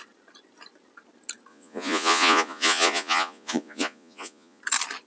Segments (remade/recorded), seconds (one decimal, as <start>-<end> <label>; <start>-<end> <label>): 0.0-1.5 recorded; 1.5-4.6 remade; 4.6-5.1 recorded